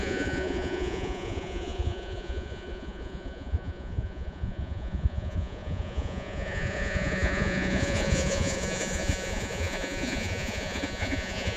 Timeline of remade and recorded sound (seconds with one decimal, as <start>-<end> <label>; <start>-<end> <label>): 0.0-11.6 remade